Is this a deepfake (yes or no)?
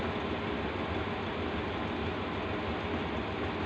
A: no